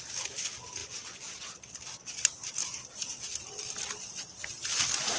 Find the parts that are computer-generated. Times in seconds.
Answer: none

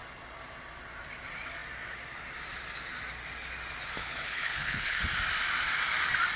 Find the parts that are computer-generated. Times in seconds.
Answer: 4.0-5.0 (codec, HILCodec)

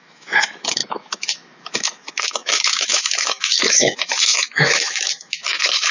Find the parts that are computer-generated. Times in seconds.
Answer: 0.0-5.9 (autoencoder, DAC-VAE)

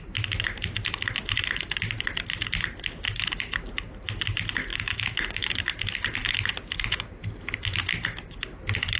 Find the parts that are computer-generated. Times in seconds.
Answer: 4.7-5.5 (autoencoder, DAC-VAE)

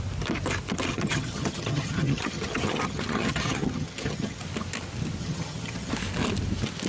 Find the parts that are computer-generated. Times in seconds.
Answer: 0.9-4.4 (vocoder, HiFi-GAN); 5.2-5.9

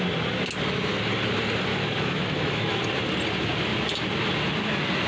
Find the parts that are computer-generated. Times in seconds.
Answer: 1.7-2.8 (autoencoder, DAC-VAE)